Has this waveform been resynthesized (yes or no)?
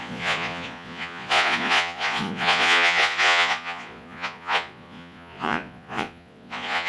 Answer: yes